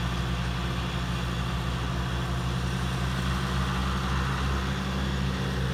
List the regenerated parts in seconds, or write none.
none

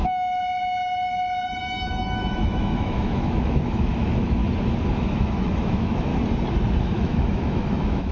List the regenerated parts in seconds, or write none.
1.6-4.4 (autoencoder, DAC-VAE); 5.0-6.1; 6.8-8.1